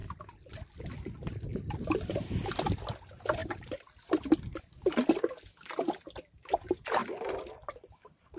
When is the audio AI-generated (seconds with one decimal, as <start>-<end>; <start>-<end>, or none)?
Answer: 1.5-2.6; 3.4-4.0